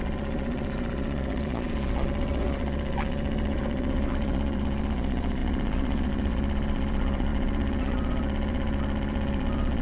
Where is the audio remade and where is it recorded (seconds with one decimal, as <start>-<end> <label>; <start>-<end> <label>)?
0.0-9.8 remade

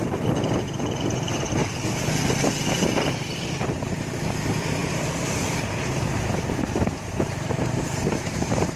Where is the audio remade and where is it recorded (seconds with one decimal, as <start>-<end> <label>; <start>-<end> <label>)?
0.0-1.6 remade; 1.6-3.1 recorded; 3.1-8.8 remade

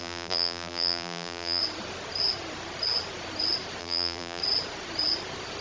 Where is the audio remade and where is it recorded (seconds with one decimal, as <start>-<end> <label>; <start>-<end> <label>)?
0.0-1.6 remade; 1.6-3.8 recorded; 3.8-4.4 remade; 4.4-5.6 recorded